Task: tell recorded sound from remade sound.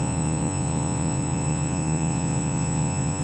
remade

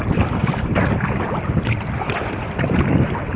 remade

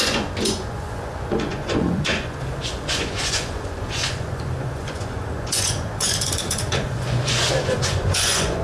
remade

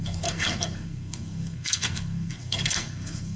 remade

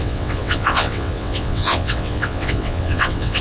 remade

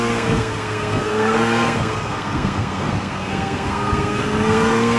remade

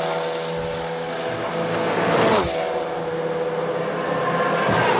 recorded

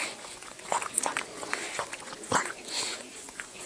remade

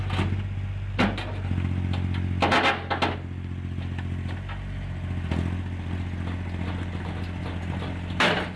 recorded